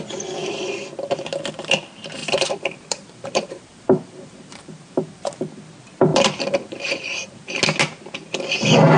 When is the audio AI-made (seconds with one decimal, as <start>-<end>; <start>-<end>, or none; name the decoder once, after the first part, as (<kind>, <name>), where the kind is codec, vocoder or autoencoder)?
2.2-5.4 (vocoder, BigVGAN v2); 6.1-7.6